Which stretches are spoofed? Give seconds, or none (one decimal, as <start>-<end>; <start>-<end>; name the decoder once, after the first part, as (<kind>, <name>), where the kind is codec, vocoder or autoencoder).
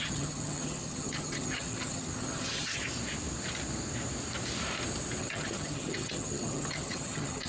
0.0-2.8 (vocoder, HiFi-GAN); 5.2-7.5